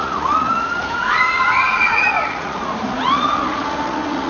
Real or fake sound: fake